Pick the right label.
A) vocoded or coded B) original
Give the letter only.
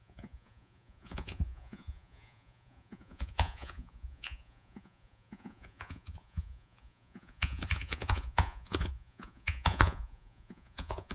A